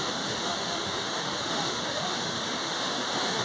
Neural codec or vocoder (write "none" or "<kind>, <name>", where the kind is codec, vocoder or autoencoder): autoencoder, DAC-VAE